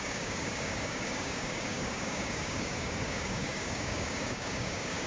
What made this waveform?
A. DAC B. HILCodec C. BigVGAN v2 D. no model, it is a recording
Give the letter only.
A